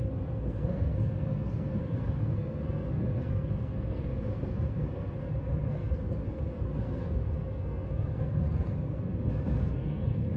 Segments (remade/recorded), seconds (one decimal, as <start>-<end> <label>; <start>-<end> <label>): 0.0-10.4 remade